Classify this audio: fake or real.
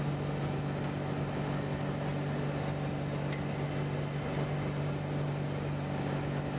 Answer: real